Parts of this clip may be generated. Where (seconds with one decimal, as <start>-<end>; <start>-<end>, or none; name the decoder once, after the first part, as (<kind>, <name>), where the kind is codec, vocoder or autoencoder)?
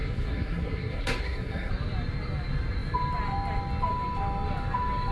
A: 0.0-1.7 (codec, SNAC)